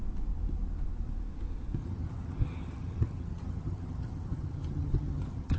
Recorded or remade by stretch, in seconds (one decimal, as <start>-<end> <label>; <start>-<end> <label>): 0.0-1.8 recorded; 1.8-5.6 remade